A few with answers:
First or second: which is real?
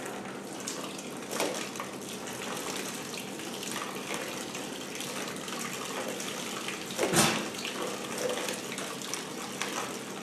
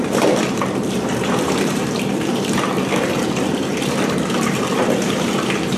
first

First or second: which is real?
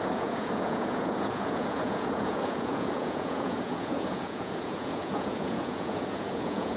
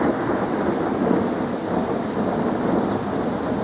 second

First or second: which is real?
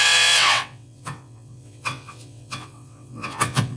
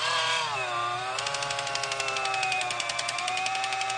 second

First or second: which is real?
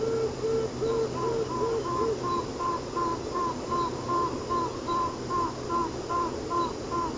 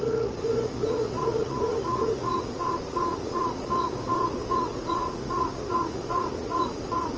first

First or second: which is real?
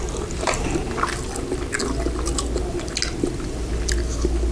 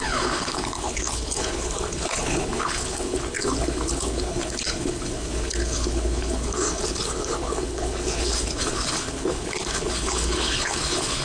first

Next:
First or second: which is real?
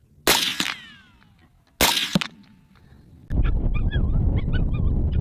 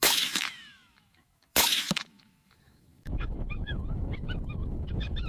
first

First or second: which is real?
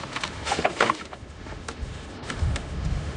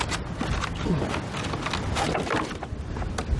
second